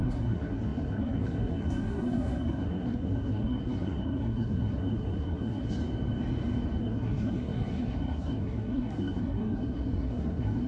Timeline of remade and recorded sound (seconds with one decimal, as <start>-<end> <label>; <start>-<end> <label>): 0.0-5.8 remade; 5.8-6.8 recorded; 6.8-10.7 remade